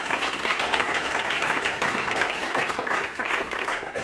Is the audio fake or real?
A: fake